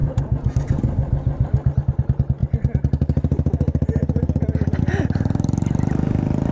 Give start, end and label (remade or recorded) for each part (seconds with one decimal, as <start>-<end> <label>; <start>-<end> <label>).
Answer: 0.0-0.5 remade; 0.5-6.5 recorded